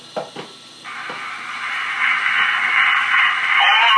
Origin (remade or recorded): recorded